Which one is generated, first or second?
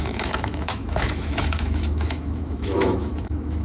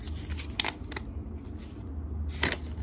first